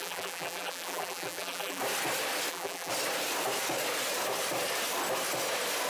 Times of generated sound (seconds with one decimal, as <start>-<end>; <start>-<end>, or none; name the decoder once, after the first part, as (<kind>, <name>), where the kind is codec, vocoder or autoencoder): 0.0-1.8 (vocoder, BigVGAN v2); 2.5-2.9